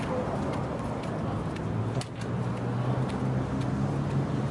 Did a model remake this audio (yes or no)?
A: no